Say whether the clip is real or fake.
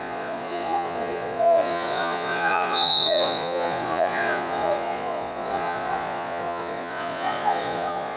fake